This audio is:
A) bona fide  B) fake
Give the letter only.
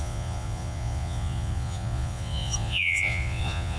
B